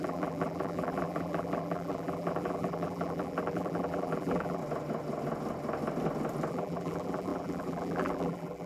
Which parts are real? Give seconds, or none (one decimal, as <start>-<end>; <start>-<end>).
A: 4.6-6.5